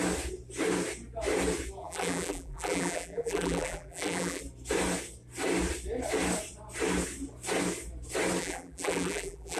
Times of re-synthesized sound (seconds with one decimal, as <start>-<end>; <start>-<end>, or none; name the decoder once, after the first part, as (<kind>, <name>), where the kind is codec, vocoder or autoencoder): 1.8-4.4 (vocoder, BigVGAN v2); 8.4-9.6